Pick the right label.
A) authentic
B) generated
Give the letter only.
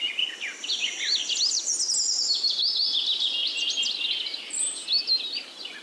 A